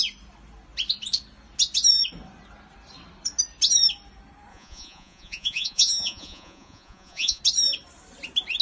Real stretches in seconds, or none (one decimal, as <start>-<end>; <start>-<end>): 0.0-4.5; 7.4-8.6